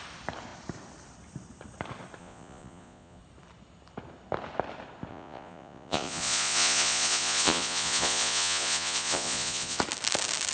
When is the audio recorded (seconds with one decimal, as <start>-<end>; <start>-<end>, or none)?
0.0-2.2; 3.2-5.1; 9.8-10.5